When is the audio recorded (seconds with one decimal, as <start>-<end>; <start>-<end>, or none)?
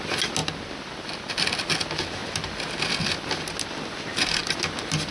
0.0-5.1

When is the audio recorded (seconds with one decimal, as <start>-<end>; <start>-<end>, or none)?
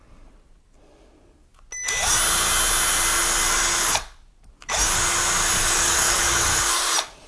0.0-5.6; 6.8-7.3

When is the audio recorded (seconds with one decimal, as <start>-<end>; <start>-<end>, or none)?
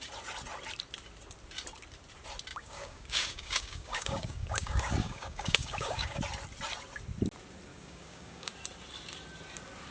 0.0-2.5; 6.2-7.7; 8.5-9.9